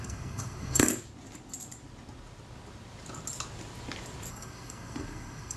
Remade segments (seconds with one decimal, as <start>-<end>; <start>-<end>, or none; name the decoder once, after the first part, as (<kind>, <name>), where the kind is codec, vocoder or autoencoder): 0.0-0.9 (codec, SNAC); 4.3-5.6